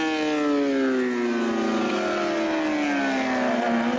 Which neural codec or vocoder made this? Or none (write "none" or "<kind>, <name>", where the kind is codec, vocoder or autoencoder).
none